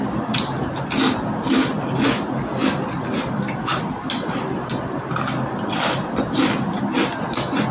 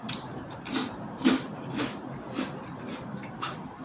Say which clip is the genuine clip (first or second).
first